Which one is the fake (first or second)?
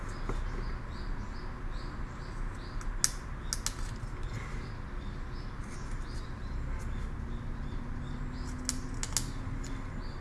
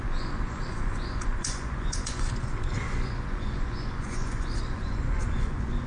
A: second